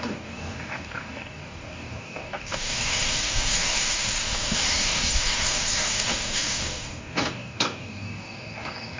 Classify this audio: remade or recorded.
remade